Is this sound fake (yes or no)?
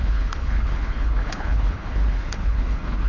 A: yes